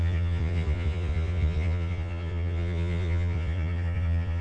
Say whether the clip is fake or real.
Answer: fake